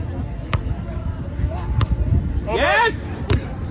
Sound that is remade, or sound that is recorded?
recorded